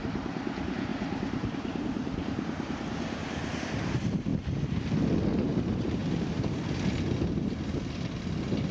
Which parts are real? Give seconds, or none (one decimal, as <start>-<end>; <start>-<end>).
4.3-5.4; 6.0-8.7